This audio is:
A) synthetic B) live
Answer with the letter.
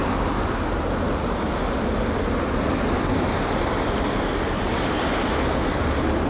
B